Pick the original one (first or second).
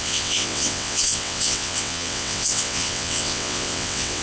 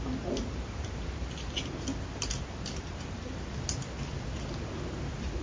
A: second